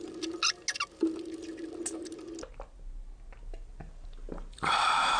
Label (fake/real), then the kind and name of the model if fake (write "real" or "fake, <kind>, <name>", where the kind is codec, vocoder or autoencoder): real